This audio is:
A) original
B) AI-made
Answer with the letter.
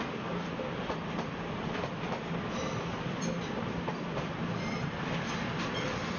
A